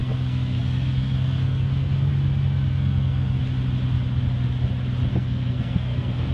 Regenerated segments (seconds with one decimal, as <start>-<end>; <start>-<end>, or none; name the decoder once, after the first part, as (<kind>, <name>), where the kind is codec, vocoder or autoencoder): 0.0-2.1 (codec, SNAC); 2.7-3.4; 5.1-6.3